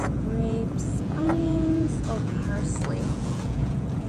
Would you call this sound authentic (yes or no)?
no